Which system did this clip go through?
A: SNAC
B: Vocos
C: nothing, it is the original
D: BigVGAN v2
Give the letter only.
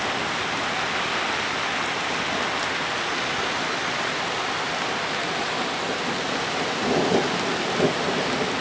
C